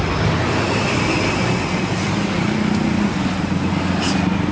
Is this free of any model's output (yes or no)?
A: yes